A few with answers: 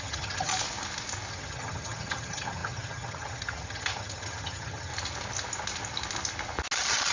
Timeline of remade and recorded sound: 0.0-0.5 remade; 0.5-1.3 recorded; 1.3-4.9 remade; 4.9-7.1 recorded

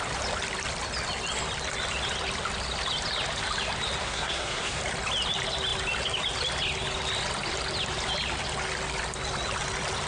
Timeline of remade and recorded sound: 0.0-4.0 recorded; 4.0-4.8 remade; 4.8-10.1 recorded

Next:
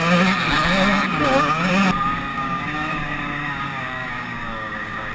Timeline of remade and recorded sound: 0.0-1.1 recorded; 1.1-1.7 remade; 1.7-2.3 recorded; 2.3-5.1 remade

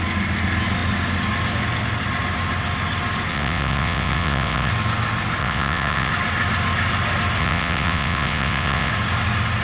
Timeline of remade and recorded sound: 0.0-3.3 recorded; 3.3-4.7 remade; 4.7-5.4 recorded; 5.4-6.1 remade; 6.1-7.4 recorded; 7.4-8.9 remade; 8.9-9.6 recorded

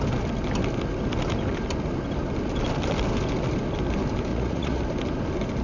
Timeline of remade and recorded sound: 0.0-4.3 recorded; 4.3-4.8 remade; 4.8-5.6 recorded

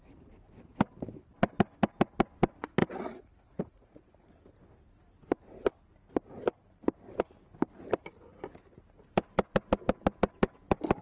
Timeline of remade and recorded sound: 0.0-2.8 recorded; 2.8-4.3 remade; 4.3-11.0 recorded

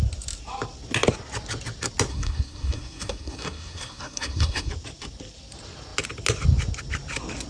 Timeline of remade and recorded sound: 0.0-2.1 recorded; 2.1-4.7 remade; 4.7-7.5 recorded

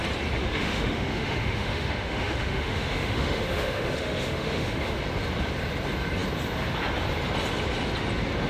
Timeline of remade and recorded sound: 0.0-0.4 recorded; 0.4-5.0 remade; 5.0-8.5 recorded